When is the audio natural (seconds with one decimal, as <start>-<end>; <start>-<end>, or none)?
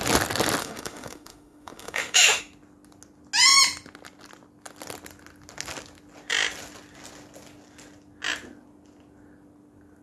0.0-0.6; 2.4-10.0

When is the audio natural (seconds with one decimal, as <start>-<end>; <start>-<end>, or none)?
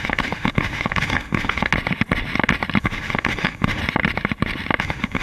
1.7-2.8; 3.8-4.8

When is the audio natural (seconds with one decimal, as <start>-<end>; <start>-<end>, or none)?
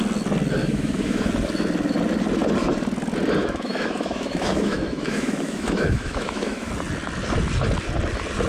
0.0-0.6; 1.3-3.4; 6.7-8.5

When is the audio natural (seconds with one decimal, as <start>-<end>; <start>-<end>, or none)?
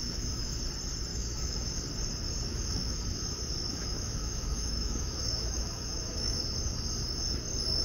0.6-1.1; 1.8-2.5; 3.0-3.7; 6.4-7.8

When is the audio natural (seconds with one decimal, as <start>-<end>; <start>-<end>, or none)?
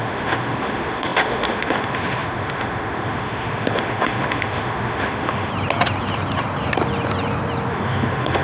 5.5-7.7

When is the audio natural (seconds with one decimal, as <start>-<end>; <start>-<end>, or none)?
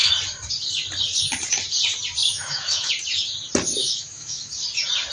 0.0-2.2; 2.9-3.8; 4.5-5.1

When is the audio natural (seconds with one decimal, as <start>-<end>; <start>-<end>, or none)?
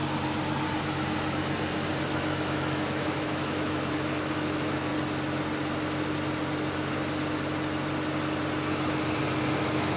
0.0-2.0; 4.9-9.6